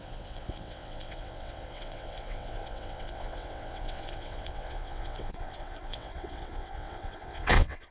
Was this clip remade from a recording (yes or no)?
yes